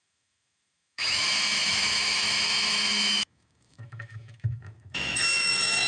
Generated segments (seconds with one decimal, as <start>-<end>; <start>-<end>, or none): 0.0-5.9